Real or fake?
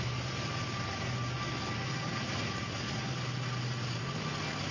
real